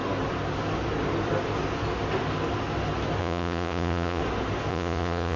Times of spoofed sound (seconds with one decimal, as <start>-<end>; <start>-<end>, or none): 3.2-4.2; 4.7-5.4